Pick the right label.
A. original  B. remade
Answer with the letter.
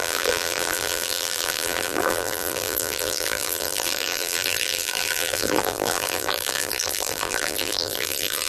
B